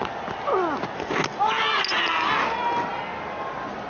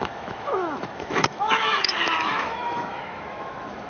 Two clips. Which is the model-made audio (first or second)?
second